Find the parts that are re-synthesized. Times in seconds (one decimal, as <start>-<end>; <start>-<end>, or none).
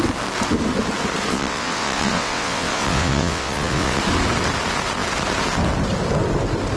1.3-4.0